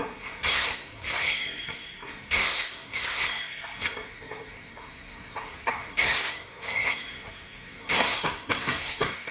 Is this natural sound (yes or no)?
no